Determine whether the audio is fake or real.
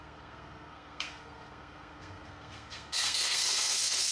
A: fake